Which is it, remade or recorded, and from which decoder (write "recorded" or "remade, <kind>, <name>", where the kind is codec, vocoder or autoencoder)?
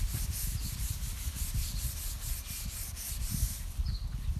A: recorded